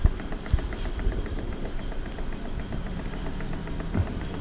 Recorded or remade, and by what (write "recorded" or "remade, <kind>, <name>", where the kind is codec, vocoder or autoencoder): recorded